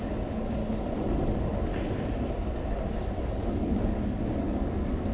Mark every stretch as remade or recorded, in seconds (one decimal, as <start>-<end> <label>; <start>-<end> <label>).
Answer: 0.0-0.6 remade; 0.6-1.2 recorded; 1.2-1.7 remade; 1.7-3.2 recorded; 3.2-5.1 remade